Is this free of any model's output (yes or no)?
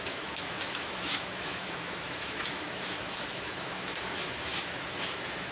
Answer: no